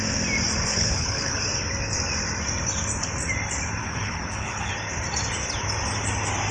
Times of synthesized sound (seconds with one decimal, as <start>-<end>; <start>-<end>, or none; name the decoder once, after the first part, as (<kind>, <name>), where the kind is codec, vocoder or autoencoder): 0.7-1.4 (codec, HILCodec); 3.8-4.7